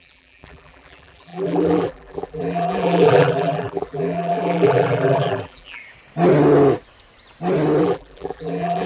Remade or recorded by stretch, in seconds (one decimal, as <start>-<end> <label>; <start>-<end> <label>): 0.0-5.8 remade; 5.8-7.8 recorded; 7.8-8.9 remade